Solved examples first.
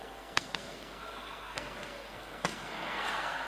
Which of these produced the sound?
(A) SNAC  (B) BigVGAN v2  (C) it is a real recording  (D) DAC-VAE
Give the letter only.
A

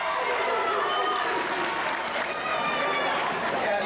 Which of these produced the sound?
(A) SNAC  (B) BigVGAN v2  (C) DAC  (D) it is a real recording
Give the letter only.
D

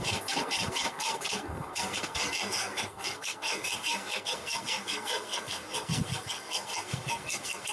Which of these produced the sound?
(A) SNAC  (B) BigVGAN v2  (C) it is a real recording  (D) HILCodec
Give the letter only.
A